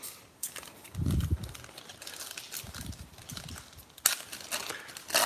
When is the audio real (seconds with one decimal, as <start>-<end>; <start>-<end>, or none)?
1.4-4.6